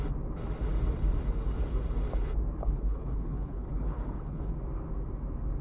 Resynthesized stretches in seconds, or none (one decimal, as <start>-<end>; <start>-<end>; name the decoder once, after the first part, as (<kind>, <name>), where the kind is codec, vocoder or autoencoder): 2.6-4.5 (codec, HILCodec)